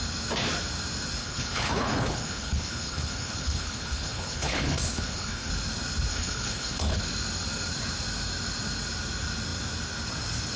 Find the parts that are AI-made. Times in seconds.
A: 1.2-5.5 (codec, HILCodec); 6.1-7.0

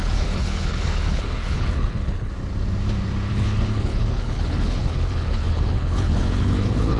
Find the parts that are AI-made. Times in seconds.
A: 0.0-2.3 (codec, HILCodec); 3.3-7.0

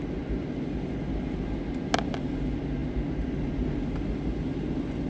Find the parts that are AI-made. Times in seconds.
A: none

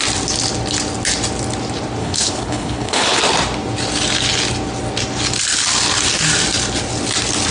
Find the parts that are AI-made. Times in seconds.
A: 2.0-3.2 (codec, HILCodec)